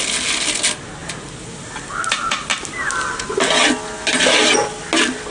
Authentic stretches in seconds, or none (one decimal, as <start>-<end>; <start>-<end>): 0.0-1.0; 1.8-2.5; 4.1-5.3